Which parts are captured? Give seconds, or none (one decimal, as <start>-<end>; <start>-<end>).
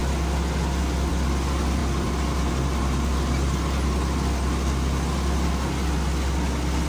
0.0-1.8; 2.5-6.9